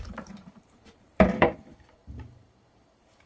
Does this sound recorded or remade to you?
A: remade